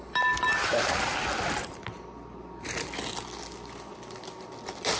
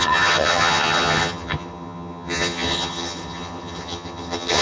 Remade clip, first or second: second